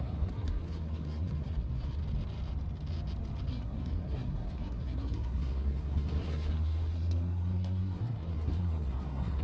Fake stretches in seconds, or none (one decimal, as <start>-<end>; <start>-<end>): 0.0-2.0; 3.5-9.4